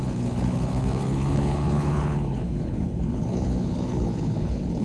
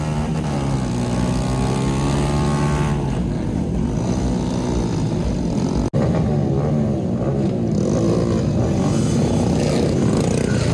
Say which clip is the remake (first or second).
first